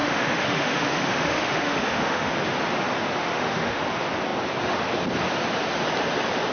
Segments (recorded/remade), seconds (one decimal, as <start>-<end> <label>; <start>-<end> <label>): 0.0-2.3 remade; 2.3-3.2 recorded; 3.2-3.8 remade; 3.8-6.5 recorded